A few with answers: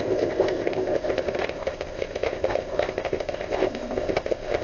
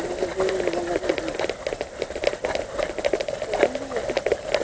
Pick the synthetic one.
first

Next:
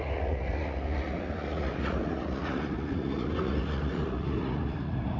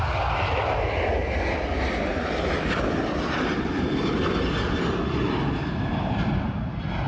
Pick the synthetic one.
first